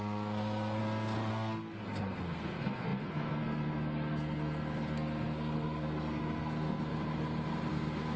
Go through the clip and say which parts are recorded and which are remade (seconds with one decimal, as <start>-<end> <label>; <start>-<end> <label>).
0.0-0.8 remade; 0.8-1.3 recorded; 1.3-6.9 remade; 6.9-7.7 recorded; 7.7-8.2 remade